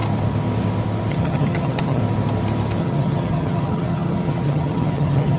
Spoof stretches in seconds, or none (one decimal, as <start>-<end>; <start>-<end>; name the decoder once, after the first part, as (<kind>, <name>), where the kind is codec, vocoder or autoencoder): 1.1-2.0 (vocoder, HiFi-GAN); 2.8-5.4